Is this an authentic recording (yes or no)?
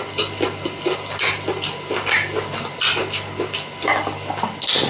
yes